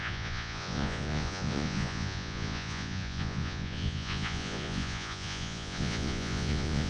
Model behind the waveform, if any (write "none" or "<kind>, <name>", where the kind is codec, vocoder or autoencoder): vocoder, Vocos